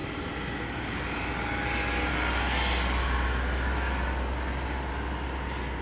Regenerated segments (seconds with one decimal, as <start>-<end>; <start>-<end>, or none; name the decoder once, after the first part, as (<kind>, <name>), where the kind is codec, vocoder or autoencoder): none